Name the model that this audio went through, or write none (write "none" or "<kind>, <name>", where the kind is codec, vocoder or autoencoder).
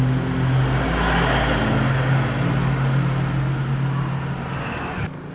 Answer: none